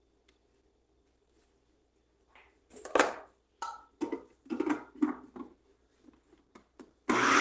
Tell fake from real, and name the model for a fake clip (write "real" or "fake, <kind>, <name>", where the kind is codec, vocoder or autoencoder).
real